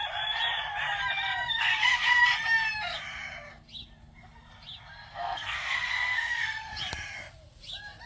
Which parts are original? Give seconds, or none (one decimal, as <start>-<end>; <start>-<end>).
0.0-1.5; 2.2-5.1; 6.7-8.1